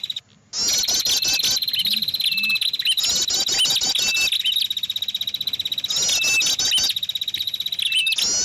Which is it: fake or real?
real